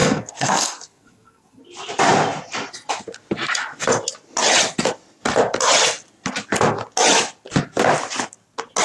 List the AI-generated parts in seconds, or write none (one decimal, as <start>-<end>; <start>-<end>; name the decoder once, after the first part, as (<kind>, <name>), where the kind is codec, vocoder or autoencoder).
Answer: 0.0-1.6 (codec, SNAC)

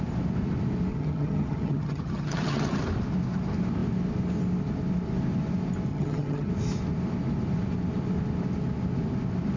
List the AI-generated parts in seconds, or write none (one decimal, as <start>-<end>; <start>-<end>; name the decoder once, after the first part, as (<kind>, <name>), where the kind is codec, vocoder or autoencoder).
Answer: 0.9-2.8 (vocoder, HiFi-GAN); 5.9-6.5

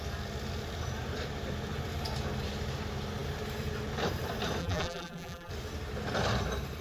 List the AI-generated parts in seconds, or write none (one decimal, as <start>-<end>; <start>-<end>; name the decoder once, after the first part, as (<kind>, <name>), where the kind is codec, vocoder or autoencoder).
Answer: 4.6-5.5 (vocoder, BigVGAN v2)

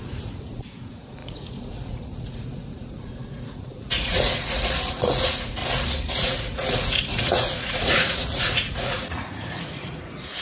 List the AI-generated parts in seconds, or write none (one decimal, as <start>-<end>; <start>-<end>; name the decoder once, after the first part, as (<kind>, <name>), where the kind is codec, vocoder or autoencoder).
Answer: 0.0-5.6 (vocoder, Vocos); 6.2-10.4